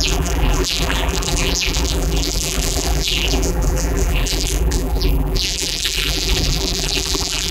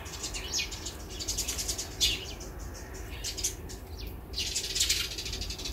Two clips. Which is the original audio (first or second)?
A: second